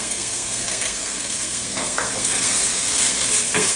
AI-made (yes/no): yes